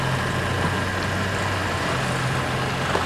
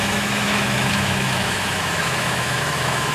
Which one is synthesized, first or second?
second